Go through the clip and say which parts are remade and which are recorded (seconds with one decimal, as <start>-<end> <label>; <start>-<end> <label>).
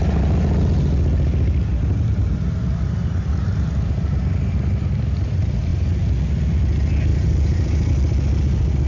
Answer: 0.0-7.1 recorded; 7.1-7.9 remade; 7.9-8.9 recorded